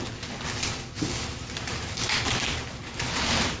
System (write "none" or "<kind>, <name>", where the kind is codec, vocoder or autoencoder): none